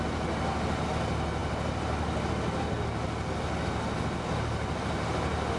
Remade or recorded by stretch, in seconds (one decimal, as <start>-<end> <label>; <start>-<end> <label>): 0.0-5.6 recorded